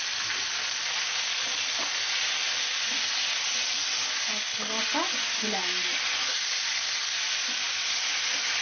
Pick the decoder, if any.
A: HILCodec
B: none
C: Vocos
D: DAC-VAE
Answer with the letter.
B